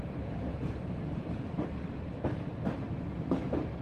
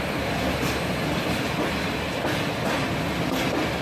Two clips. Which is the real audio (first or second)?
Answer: second